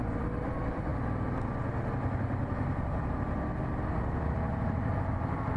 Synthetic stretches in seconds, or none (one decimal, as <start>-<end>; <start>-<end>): 0.0-0.9; 4.3-5.6